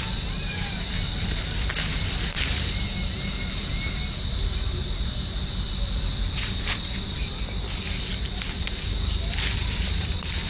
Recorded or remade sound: recorded